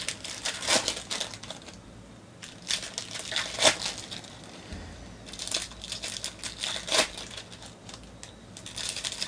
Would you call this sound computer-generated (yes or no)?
no